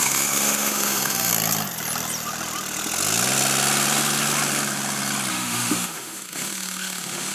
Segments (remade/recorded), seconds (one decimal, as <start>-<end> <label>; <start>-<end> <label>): 0.0-1.3 remade; 1.3-5.3 recorded; 5.3-7.3 remade